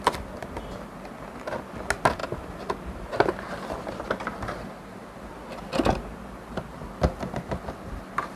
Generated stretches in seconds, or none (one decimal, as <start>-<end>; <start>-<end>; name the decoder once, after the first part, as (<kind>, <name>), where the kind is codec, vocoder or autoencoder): none